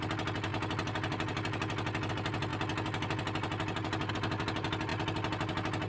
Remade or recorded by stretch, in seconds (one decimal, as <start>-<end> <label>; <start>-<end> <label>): 0.0-5.9 recorded